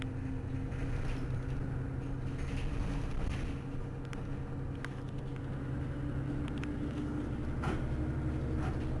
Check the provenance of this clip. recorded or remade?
recorded